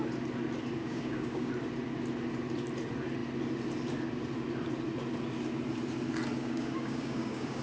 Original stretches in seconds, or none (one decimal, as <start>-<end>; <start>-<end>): 0.0-0.8; 1.5-6.4